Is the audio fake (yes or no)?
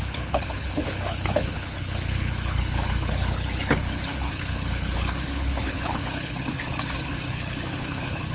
yes